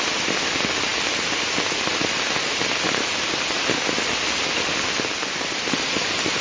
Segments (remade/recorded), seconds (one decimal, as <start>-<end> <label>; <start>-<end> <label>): 0.0-6.4 recorded